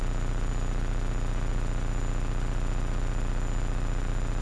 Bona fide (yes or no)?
yes